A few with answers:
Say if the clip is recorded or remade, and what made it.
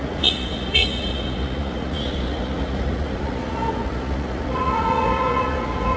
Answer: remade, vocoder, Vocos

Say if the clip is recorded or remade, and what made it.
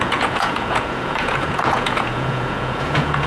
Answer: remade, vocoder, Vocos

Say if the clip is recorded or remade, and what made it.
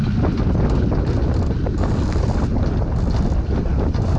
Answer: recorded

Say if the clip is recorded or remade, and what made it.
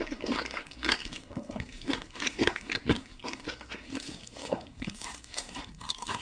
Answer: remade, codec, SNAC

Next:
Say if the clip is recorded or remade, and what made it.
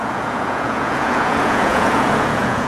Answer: remade, vocoder, Vocos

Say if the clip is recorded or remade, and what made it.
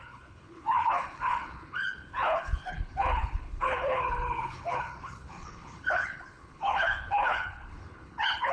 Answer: remade, codec, HILCodec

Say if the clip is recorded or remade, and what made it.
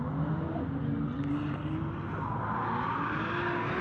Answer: recorded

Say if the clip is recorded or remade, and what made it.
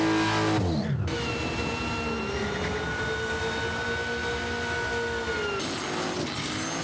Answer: recorded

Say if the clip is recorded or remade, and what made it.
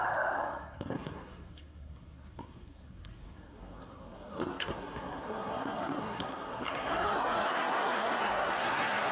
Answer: remade, codec, SNAC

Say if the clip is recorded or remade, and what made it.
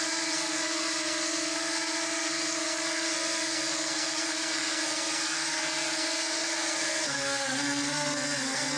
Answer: remade, codec, SNAC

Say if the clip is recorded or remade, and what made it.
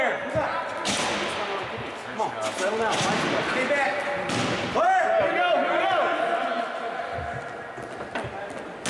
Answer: recorded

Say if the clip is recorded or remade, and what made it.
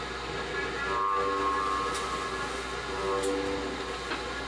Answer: recorded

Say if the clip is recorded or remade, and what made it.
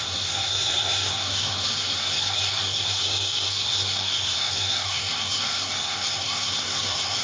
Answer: remade, codec, SNAC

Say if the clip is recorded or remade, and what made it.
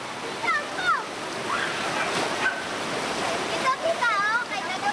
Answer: recorded